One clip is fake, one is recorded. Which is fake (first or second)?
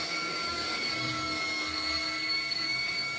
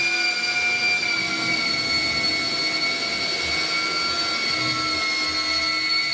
first